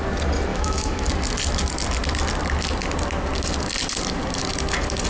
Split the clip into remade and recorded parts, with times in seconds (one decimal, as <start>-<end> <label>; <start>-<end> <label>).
0.0-0.5 recorded; 0.5-1.1 remade; 1.1-5.1 recorded